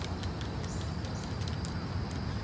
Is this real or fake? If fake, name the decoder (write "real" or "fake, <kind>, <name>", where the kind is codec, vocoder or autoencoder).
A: real